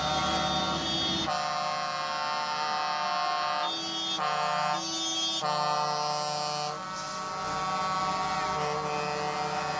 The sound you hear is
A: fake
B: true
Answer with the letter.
B